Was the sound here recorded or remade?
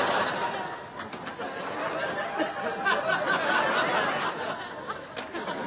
recorded